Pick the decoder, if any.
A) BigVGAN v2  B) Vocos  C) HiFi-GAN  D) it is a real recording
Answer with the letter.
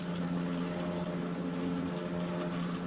D